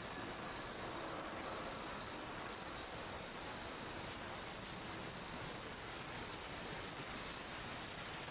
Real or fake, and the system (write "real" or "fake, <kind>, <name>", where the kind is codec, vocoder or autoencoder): real